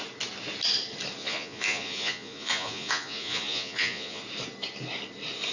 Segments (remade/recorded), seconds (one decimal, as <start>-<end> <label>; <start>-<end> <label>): 0.0-1.2 recorded; 1.2-4.2 remade; 4.2-5.5 recorded